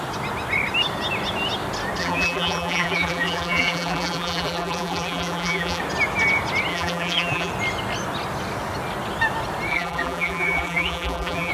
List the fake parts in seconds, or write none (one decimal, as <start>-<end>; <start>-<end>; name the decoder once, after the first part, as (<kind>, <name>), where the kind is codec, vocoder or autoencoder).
2.0-5.8 (vocoder, BigVGAN v2); 6.7-7.5; 9.7-11.5